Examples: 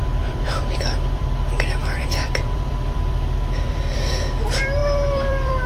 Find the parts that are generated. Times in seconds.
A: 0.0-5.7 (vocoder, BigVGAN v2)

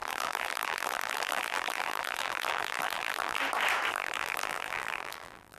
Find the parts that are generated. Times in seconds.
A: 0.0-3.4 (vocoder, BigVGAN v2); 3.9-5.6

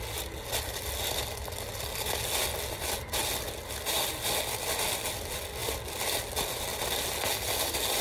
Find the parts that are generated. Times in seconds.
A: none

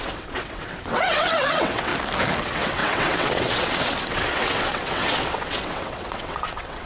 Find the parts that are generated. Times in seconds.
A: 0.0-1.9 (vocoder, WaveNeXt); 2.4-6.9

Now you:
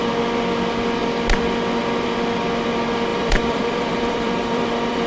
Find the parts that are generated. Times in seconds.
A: 3.1-5.1 (vocoder, BigVGAN v2)